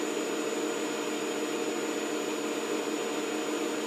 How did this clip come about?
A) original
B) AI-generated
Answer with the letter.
A